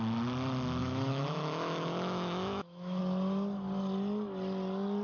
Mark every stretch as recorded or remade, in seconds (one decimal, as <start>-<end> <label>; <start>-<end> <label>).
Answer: 0.0-0.8 recorded; 0.8-3.0 remade; 3.0-5.0 recorded